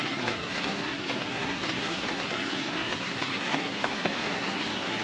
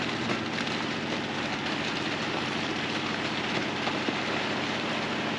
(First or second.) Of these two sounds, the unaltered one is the second